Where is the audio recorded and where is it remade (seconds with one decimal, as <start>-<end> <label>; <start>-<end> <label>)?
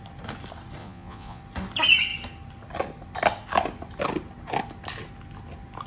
0.0-0.8 recorded; 0.8-1.4 remade; 1.4-5.9 recorded